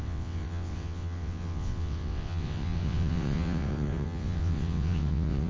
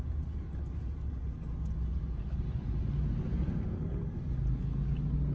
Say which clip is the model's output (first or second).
first